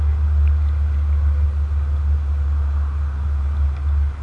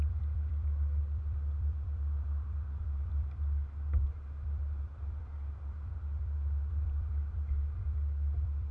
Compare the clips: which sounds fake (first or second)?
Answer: second